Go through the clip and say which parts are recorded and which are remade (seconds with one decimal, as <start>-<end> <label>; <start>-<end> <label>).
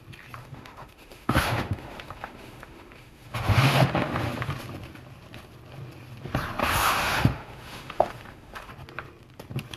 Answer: 0.0-0.4 recorded; 0.4-4.5 remade; 4.5-6.6 recorded; 6.6-8.7 remade; 8.7-9.8 recorded